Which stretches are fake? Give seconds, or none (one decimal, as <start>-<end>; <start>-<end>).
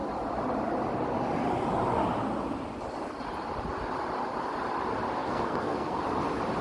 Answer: 5.2-6.0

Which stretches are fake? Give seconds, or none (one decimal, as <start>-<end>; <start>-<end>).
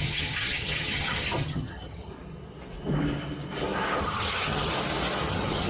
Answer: 0.0-2.1; 4.0-4.7; 5.3-5.7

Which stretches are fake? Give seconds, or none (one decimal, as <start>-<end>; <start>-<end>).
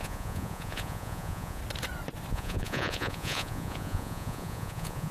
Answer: 0.0-1.6; 2.3-5.1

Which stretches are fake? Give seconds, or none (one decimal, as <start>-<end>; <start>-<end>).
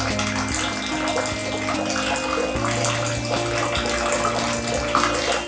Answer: none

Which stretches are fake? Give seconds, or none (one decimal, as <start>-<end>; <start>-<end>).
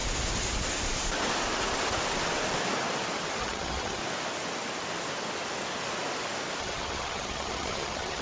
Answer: 3.4-4.0; 6.6-8.2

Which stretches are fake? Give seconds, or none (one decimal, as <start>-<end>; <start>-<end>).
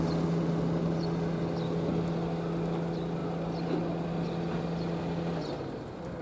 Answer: none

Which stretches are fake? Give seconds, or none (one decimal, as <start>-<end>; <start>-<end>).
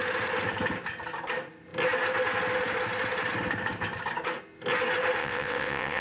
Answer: 5.2-6.0